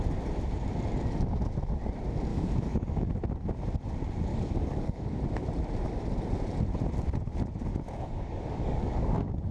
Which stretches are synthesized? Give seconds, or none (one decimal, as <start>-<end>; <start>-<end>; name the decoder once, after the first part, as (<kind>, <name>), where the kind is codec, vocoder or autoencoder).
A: 2.3-3.1 (codec, DAC); 4.3-5.2; 7.7-9.5